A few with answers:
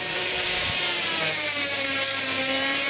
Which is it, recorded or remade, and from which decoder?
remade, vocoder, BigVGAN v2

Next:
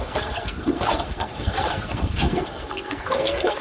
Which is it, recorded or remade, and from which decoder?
remade, codec, SNAC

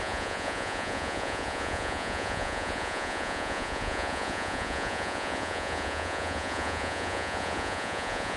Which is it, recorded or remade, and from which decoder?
remade, vocoder, Vocos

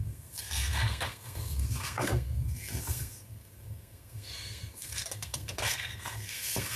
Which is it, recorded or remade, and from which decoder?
remade, codec, SNAC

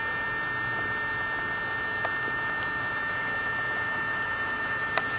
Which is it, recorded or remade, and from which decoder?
recorded